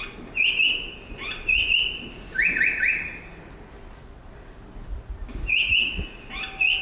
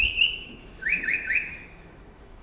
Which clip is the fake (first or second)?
second